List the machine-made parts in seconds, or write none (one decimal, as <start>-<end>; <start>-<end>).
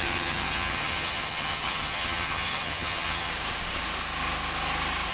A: 0.0-3.3